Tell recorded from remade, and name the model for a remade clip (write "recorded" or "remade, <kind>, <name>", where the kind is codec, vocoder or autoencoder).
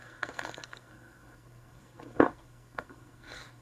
remade, codec, SNAC